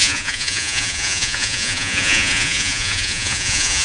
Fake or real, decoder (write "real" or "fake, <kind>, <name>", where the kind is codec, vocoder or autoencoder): fake, vocoder, Vocos